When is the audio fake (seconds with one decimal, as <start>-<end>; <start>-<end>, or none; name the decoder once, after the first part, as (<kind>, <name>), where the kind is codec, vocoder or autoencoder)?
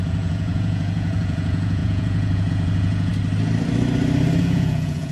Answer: 0.0-3.1 (vocoder, Vocos); 4.4-5.1